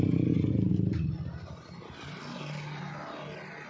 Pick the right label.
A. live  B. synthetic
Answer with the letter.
A